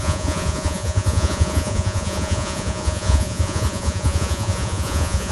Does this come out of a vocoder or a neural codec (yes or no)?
yes